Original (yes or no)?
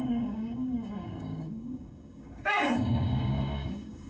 no